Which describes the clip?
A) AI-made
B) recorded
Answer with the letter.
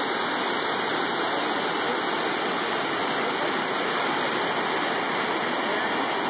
B